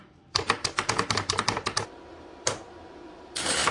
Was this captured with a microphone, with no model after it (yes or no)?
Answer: no